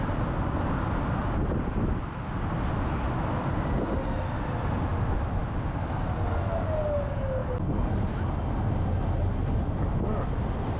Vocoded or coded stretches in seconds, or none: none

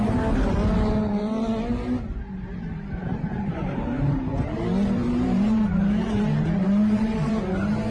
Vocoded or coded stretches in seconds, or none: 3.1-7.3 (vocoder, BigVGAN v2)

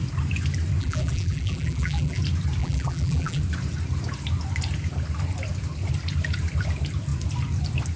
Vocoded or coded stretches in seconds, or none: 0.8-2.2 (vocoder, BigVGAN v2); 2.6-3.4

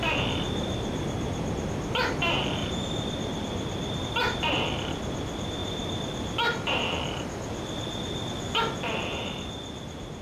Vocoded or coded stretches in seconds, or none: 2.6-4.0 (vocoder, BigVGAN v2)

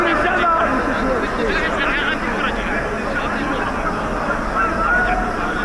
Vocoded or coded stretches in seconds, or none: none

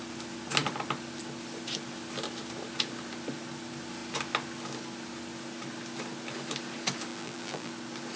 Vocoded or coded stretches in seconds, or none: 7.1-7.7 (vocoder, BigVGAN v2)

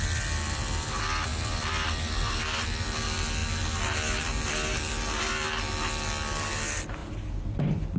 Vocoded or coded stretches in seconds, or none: 1.3-2.4 (vocoder, BigVGAN v2)

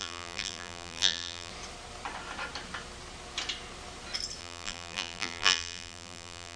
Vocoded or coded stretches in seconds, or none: 0.0-1.5 (vocoder, BigVGAN v2); 4.4-6.6